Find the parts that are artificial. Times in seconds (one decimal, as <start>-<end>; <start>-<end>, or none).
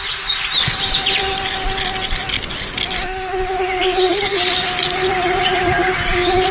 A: none